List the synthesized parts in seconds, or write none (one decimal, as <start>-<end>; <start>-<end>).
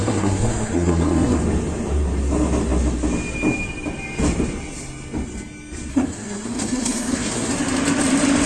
0.0-1.4; 5.9-7.5